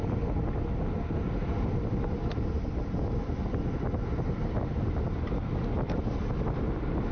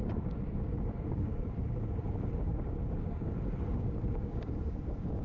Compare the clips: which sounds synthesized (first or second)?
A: second